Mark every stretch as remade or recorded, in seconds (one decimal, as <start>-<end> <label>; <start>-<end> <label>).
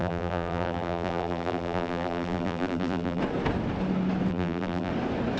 0.0-3.2 remade; 3.2-4.3 recorded; 4.3-4.9 remade; 4.9-5.4 recorded